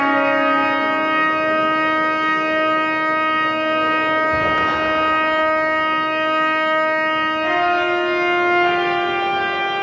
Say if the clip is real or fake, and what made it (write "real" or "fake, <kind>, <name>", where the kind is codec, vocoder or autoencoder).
real